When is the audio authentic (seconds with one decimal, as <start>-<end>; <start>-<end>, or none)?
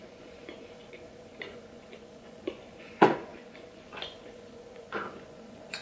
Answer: none